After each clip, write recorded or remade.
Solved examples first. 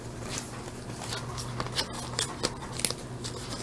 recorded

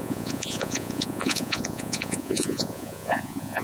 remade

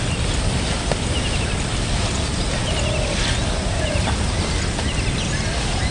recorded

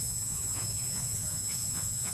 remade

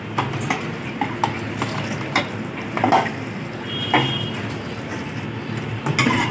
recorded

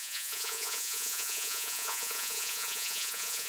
remade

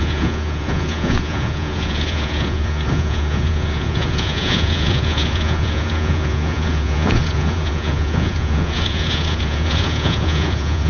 remade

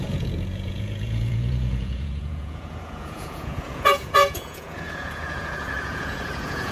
remade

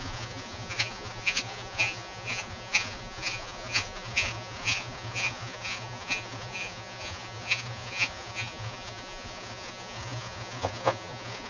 remade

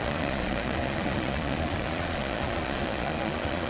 remade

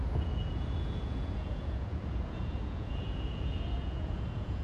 remade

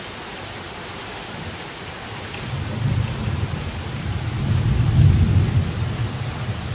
recorded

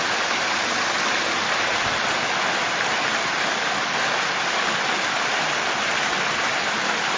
recorded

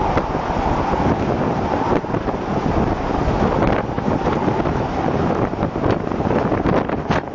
recorded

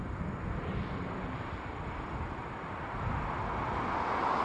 recorded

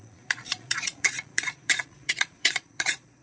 remade